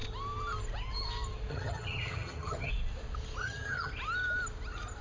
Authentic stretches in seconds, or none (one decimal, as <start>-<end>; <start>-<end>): 0.0-1.5; 2.7-3.4; 3.9-5.0